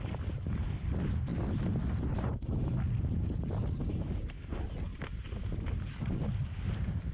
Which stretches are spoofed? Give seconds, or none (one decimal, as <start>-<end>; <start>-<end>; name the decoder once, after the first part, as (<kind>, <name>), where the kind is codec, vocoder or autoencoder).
none